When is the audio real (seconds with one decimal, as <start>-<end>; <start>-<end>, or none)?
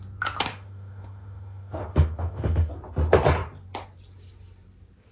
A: 0.0-0.5; 2.7-5.1